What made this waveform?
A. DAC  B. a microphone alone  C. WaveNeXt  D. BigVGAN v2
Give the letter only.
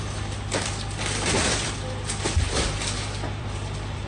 D